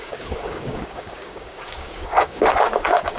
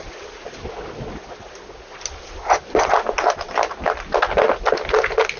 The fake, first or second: first